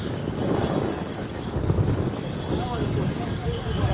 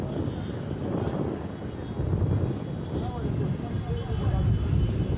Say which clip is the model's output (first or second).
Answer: first